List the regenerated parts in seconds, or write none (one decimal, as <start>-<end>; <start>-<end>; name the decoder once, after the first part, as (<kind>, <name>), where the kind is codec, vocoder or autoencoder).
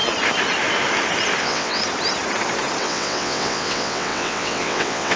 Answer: 1.4-1.8 (vocoder, WaveNeXt); 2.8-5.2